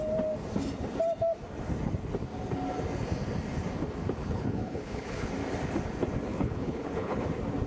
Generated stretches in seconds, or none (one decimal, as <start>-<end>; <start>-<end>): 4.2-5.3; 6.3-7.2